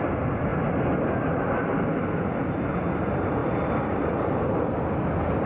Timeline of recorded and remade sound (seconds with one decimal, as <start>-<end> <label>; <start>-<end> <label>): 0.0-5.5 recorded